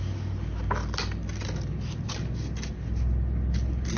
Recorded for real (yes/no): yes